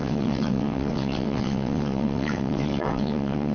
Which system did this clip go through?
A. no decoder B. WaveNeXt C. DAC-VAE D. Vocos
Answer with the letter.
B